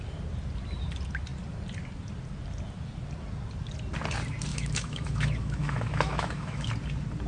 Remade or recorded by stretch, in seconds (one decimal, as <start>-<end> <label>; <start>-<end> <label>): 0.0-4.5 recorded; 4.5-6.7 remade; 6.7-7.3 recorded

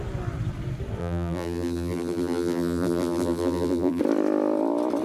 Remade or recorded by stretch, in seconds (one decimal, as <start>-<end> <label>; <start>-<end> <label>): 0.0-1.0 recorded; 1.0-4.0 remade; 4.0-5.0 recorded